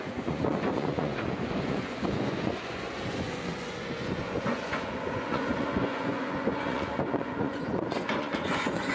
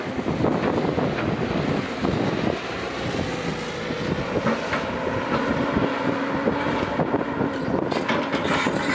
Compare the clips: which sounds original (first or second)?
second